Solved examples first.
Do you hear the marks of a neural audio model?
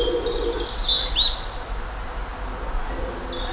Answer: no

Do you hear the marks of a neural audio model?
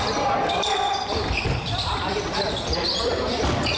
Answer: yes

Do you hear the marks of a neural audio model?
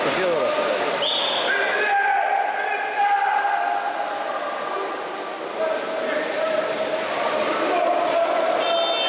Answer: no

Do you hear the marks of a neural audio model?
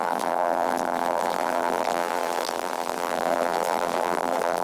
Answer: yes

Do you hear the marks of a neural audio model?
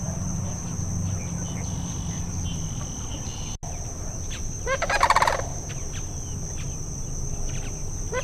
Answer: no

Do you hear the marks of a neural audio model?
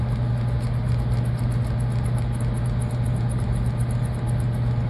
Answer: no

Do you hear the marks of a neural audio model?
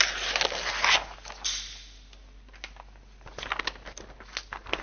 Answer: no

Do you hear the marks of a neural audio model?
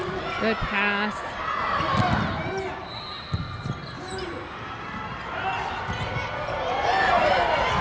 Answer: no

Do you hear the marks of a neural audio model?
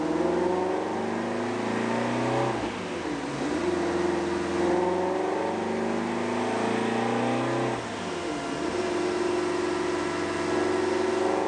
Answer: no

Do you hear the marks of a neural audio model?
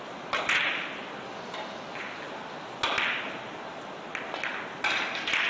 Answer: no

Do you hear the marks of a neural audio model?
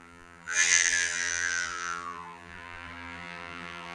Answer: yes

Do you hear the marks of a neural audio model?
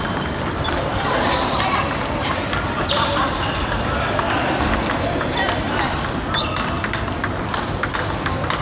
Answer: yes